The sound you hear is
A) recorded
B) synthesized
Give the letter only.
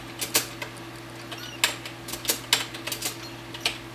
A